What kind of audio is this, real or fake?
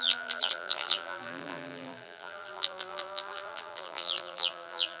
fake